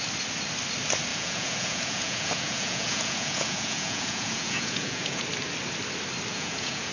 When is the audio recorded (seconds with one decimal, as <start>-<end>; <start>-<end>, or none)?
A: 0.0-1.1; 5.2-6.3